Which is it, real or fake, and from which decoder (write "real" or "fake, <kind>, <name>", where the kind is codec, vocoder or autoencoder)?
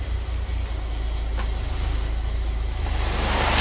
real